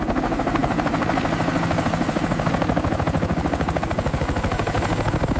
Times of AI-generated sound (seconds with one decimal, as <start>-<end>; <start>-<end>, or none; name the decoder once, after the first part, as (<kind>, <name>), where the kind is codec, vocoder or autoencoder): none